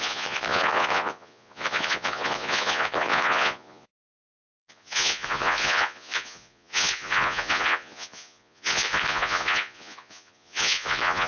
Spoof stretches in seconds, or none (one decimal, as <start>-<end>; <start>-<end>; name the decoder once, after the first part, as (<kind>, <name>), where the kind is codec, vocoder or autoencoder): 0.0-11.3 (vocoder, Vocos)